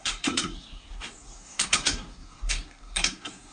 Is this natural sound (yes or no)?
no